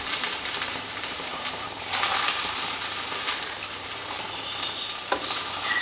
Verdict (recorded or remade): remade